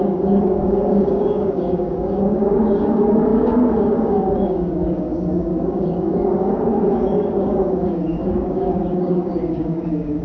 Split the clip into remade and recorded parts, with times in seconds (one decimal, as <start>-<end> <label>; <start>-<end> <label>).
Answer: 0.0-10.2 remade